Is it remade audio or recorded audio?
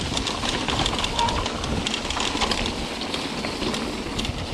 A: recorded